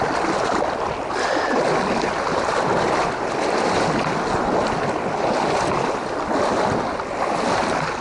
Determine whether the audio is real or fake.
real